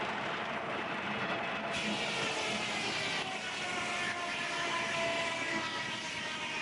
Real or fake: real